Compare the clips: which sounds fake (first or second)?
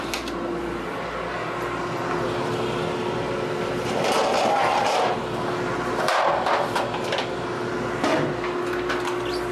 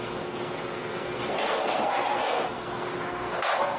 second